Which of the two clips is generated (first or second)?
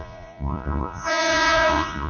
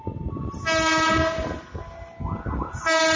first